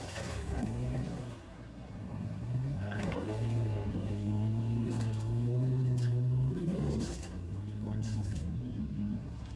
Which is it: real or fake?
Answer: fake